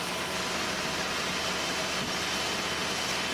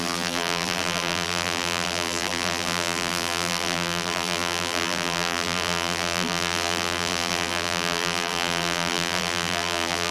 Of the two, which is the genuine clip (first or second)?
first